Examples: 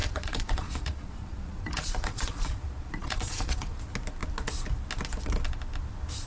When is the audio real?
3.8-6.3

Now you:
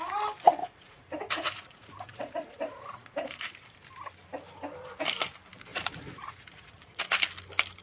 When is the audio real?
0.0-0.6; 3.5-5.7; 7.0-7.8

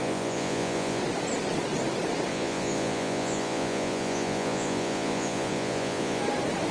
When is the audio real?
1.0-2.3; 6.2-6.7

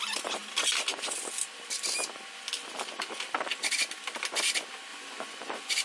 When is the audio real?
0.0-4.9

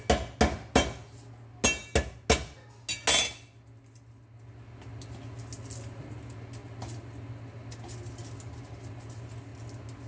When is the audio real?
0.0-10.1

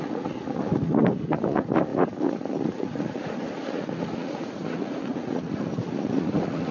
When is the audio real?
none

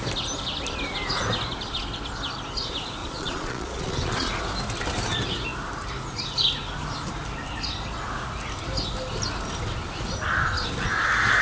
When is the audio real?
0.0-3.0; 4.3-11.4

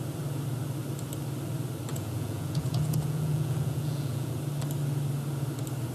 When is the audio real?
0.0-1.9; 4.3-5.9